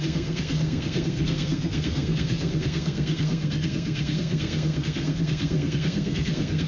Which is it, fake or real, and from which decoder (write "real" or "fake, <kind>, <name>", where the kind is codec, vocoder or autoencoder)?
fake, codec, SNAC